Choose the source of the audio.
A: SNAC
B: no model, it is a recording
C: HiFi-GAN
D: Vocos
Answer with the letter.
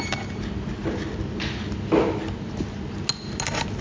B